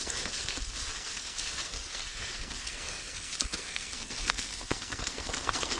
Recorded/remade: remade